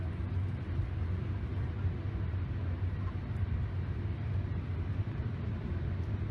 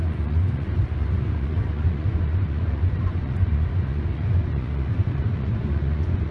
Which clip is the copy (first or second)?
second